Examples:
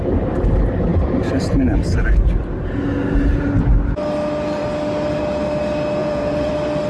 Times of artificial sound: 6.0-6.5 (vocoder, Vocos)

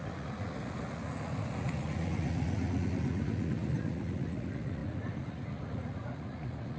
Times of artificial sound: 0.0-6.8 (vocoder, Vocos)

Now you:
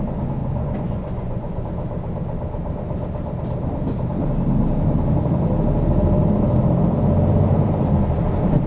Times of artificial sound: 0.4-1.6 (vocoder, Vocos)